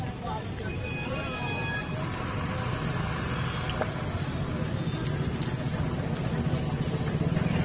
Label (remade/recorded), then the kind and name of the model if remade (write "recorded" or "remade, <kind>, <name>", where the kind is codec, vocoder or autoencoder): recorded